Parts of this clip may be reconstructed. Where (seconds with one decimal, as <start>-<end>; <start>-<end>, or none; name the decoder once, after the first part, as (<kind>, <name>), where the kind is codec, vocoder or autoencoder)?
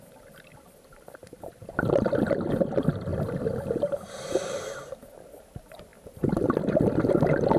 0.0-3.1 (vocoder, BigVGAN v2); 3.8-5.9; 6.6-7.6